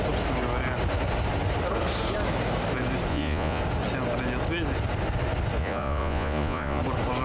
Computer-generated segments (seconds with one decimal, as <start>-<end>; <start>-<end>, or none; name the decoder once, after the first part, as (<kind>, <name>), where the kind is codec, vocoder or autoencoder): 3.1-3.6 (vocoder, Vocos); 5.6-6.8

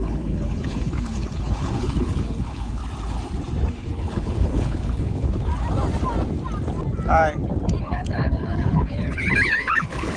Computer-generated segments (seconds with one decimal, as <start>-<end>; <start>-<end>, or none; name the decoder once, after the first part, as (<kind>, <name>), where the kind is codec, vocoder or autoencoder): 0.0-2.8 (codec, HILCodec); 3.7-5.5; 7.8-10.2

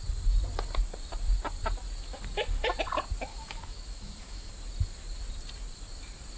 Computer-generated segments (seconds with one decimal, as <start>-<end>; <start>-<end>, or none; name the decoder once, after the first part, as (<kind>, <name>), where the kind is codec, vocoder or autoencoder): 3.3-4.5 (autoencoder, DAC-VAE)

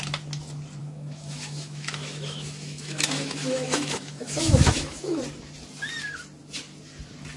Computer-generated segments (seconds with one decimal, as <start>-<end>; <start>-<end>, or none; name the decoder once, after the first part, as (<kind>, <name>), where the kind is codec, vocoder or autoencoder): 0.8-5.2 (autoencoder, DAC-VAE)

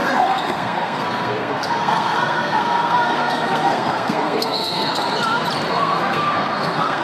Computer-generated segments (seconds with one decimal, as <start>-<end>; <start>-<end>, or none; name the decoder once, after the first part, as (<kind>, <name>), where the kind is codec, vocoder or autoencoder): 0.0-5.0 (codec, SNAC); 5.7-7.0

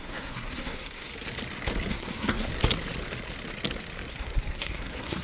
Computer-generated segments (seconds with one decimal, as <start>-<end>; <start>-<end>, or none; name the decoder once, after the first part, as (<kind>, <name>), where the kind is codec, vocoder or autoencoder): 0.0-1.1 (codec, SNAC); 1.9-2.5; 4.1-5.2

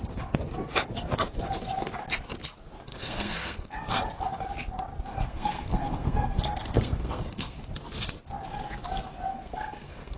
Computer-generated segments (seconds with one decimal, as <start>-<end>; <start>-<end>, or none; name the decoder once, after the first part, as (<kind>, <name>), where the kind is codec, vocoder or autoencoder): 2.9-4.0 (codec, SNAC); 5.1-7.6; 9.3-10.2